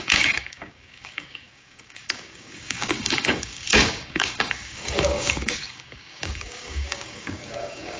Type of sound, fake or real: fake